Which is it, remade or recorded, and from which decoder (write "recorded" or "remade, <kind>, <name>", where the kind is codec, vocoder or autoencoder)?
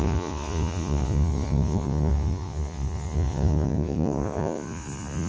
remade, vocoder, Vocos